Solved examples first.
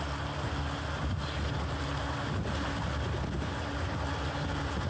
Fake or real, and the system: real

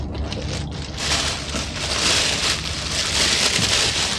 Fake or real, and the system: real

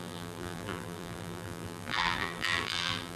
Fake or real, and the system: fake, vocoder, BigVGAN v2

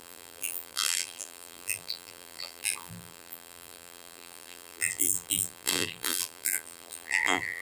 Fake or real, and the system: fake, vocoder, BigVGAN v2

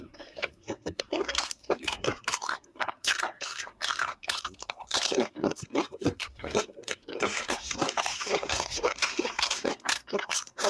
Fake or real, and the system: fake, codec, SNAC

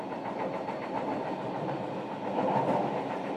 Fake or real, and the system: real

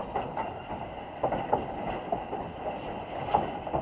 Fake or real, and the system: real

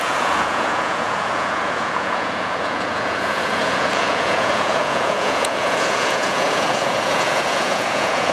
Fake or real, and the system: fake, vocoder, Vocos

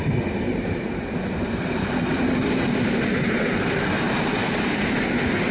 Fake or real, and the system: fake, vocoder, BigVGAN v2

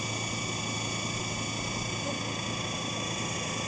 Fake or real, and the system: real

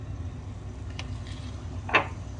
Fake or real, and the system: real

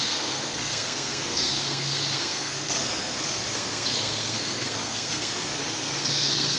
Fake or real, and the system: fake, codec, SNAC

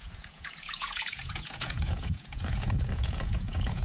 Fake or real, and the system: fake, vocoder, Vocos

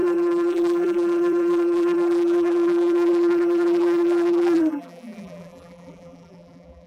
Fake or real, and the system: fake, vocoder, BigVGAN v2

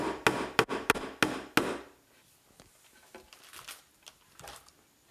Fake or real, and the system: real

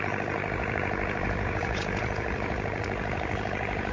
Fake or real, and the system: fake, vocoder, Vocos